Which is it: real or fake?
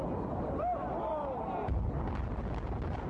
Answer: real